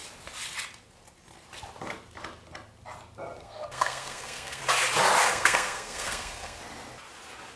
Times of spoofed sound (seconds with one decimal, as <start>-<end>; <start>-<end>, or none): 3.4-4.6; 5.2-6.6